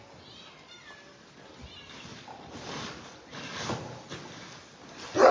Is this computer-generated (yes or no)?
no